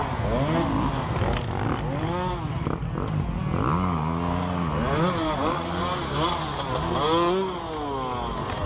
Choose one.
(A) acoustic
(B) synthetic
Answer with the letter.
A